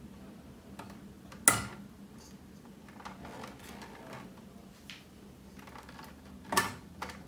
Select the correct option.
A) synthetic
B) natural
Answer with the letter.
B